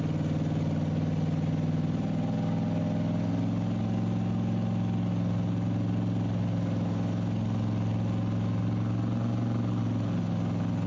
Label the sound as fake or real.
real